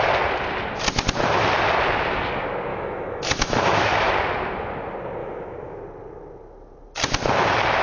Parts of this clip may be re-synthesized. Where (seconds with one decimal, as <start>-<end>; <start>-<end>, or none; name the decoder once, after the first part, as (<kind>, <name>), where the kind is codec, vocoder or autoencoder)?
2.7-4.1 (autoencoder, DAC-VAE); 5.2-5.8